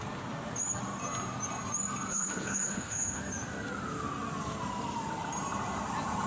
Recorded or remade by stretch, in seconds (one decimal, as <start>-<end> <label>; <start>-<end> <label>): 0.0-2.1 recorded; 2.1-3.2 remade; 3.2-6.3 recorded